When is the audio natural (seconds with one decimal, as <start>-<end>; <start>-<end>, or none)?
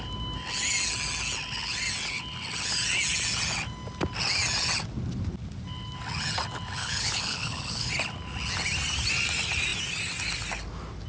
0.0-6.8; 7.9-11.1